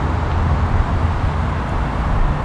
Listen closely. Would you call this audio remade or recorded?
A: recorded